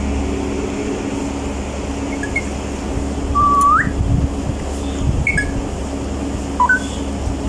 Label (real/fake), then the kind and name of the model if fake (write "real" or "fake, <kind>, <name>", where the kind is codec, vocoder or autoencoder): real